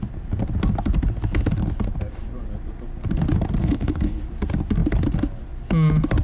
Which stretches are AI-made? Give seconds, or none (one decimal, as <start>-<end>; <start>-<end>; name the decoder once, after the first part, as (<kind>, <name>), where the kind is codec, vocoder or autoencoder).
3.6-4.2 (codec, HILCodec)

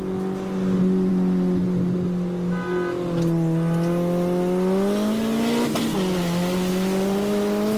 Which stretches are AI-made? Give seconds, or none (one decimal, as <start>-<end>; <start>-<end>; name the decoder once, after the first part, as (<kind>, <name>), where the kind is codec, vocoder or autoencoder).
none

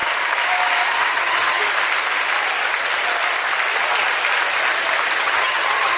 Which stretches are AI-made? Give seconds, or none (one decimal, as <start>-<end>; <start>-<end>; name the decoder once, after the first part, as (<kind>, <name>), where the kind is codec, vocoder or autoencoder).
1.0-1.6 (vocoder, HiFi-GAN); 5.2-6.0

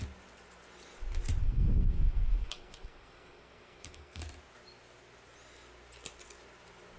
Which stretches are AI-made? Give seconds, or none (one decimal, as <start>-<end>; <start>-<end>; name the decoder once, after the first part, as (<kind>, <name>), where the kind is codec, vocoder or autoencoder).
1.4-4.2 (codec, SNAC)

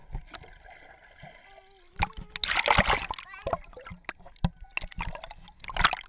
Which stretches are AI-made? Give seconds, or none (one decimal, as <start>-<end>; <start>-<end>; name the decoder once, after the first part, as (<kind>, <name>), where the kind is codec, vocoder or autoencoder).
none

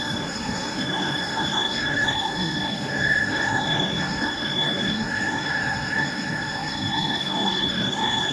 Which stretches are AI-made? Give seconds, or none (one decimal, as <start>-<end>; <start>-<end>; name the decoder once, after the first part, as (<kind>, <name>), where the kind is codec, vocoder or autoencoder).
0.0-8.3 (codec, SNAC)

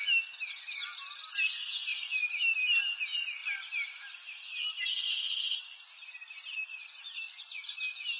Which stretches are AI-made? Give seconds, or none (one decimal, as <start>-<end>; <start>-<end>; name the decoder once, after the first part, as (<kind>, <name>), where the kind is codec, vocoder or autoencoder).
1.9-2.8 (vocoder, BigVGAN v2); 3.4-7.4